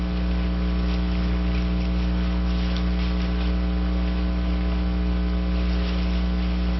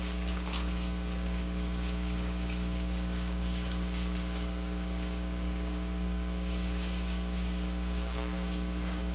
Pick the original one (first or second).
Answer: first